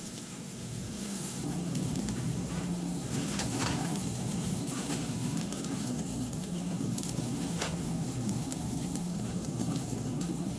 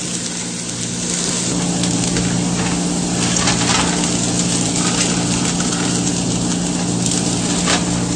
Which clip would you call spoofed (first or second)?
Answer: first